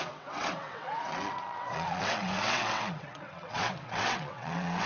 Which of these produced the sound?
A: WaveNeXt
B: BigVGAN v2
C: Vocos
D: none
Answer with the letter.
A